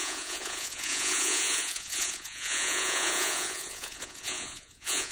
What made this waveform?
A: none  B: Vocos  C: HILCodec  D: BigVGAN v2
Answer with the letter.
B